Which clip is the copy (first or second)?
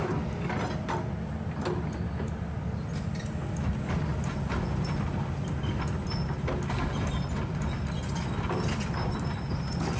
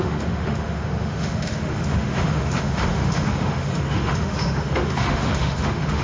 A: second